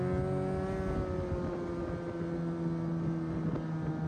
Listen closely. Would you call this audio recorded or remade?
recorded